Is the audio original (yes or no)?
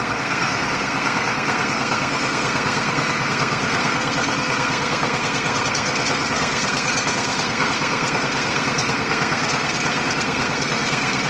no